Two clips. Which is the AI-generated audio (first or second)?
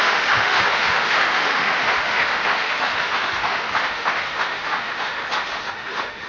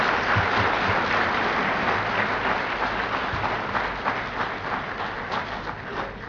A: first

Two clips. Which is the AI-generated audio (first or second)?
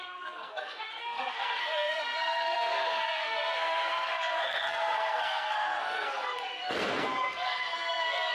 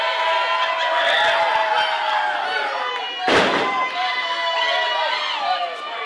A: first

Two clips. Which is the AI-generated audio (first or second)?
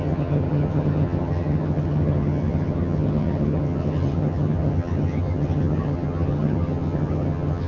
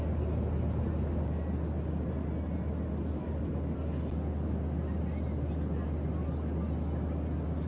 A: first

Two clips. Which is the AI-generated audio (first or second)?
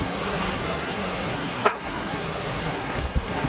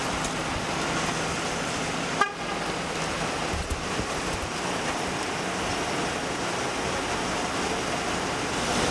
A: first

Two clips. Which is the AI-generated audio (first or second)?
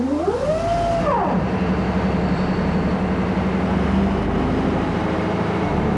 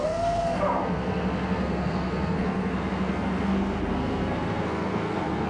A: second